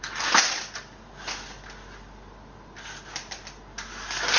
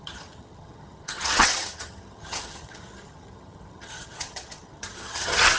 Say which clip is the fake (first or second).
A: second